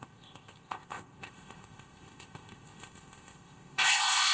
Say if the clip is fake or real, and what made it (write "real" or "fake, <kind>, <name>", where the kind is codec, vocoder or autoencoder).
fake, codec, ZipCodec